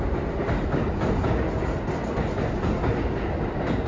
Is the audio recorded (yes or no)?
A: yes